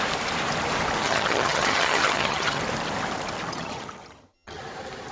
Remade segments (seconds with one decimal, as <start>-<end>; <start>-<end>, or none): 1.0-2.6; 3.5-4.6